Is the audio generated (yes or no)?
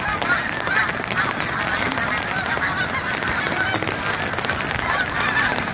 no